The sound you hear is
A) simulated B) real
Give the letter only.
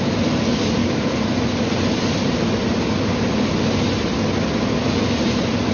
B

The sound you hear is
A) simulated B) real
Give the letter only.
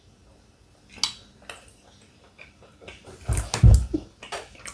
B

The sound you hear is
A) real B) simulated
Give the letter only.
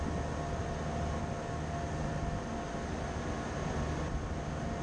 A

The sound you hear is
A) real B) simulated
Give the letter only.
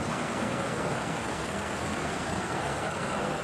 B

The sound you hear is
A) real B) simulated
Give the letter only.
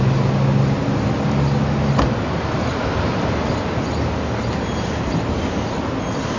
A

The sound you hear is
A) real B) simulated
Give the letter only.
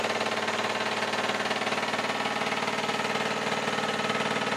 A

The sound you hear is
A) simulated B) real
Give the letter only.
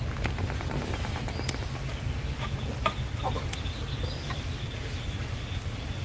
B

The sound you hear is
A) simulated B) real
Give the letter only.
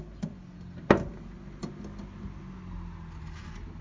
B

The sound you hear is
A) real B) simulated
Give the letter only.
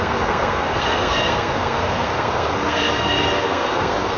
B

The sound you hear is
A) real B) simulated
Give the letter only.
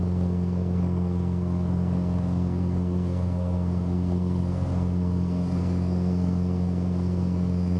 B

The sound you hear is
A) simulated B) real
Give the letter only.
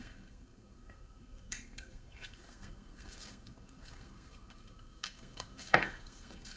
A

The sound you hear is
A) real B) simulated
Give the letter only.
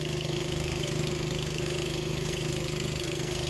B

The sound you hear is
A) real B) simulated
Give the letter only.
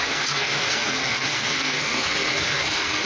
B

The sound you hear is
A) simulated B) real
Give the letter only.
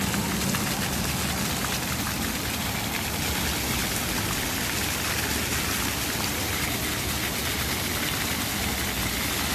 B